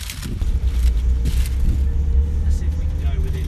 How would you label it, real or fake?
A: real